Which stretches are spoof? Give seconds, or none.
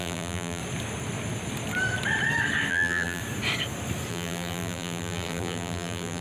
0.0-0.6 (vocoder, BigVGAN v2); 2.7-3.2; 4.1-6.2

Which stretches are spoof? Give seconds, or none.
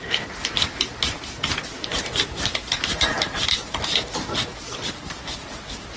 none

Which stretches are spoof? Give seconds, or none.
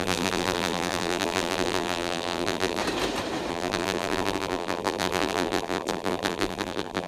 0.0-2.8 (vocoder, BigVGAN v2); 3.5-7.1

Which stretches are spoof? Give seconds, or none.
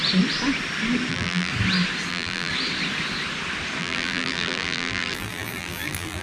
1.1-1.5 (vocoder, BigVGAN v2); 2.1-2.5; 3.8-6.2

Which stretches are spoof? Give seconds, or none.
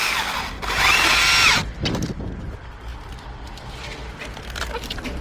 0.0-0.5 (vocoder, BigVGAN v2); 2.9-4.6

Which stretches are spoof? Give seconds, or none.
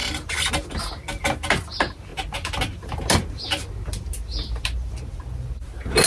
none